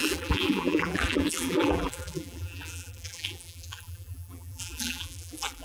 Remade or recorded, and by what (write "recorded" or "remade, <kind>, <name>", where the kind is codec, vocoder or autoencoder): remade, vocoder, BigVGAN v2